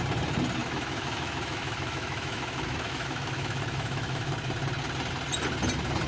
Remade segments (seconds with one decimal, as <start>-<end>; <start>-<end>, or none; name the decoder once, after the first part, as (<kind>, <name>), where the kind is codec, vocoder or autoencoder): 0.6-4.3 (autoencoder, DAC-VAE)